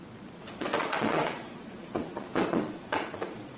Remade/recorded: remade